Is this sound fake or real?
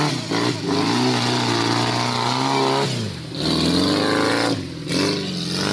real